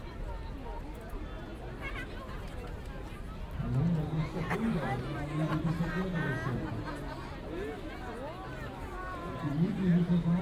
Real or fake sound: real